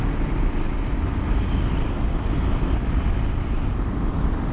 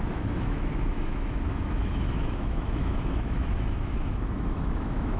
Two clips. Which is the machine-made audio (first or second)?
second